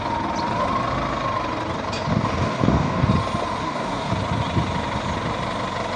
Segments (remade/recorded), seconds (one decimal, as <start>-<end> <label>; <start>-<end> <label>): 0.0-2.1 recorded; 2.1-3.1 remade; 3.1-3.6 recorded; 3.6-4.1 remade; 4.1-6.0 recorded